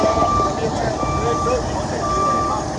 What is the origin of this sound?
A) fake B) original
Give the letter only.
B